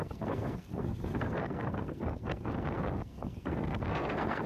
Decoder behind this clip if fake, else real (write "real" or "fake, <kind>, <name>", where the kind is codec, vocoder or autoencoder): fake, codec, SNAC